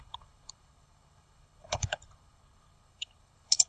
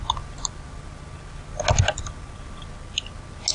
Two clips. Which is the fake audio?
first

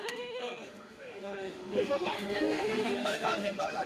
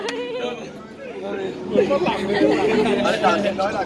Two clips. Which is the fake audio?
first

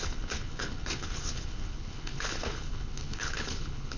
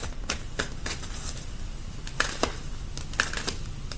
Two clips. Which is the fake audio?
first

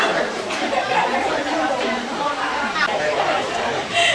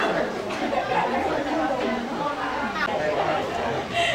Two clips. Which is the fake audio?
first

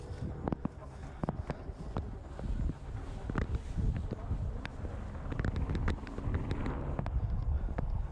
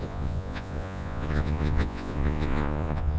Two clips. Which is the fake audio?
second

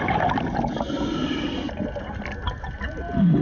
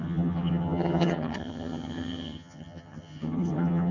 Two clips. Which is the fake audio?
second